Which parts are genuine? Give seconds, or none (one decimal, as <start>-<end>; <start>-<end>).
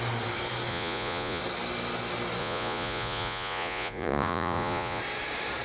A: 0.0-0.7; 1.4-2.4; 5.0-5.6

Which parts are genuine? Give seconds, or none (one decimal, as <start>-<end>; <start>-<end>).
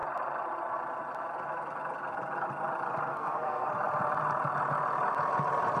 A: 0.0-3.1; 3.7-5.8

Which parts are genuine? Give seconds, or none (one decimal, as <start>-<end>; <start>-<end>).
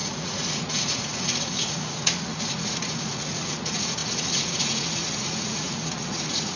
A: none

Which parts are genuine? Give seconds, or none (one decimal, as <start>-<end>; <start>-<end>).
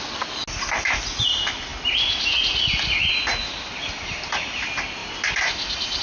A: 0.0-6.0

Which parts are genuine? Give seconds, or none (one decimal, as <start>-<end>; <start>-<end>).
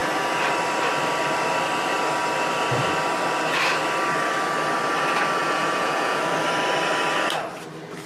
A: 0.0-5.4; 6.2-8.1